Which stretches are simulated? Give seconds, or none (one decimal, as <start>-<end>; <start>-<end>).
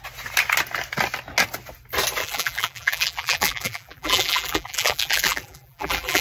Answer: 2.2-6.2